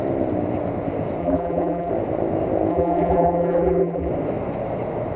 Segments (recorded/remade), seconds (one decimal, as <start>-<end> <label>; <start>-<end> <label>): 0.0-1.2 recorded; 1.2-1.9 remade; 1.9-2.7 recorded; 2.7-4.1 remade; 4.1-5.2 recorded